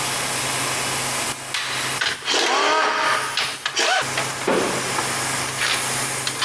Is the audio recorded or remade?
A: recorded